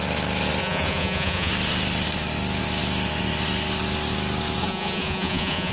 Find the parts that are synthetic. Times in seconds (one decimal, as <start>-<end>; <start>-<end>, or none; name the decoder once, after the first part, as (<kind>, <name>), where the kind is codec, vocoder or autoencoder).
0.6-1.5 (vocoder, Vocos); 4.6-5.7